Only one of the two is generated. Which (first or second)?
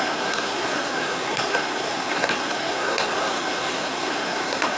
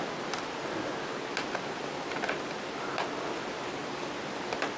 first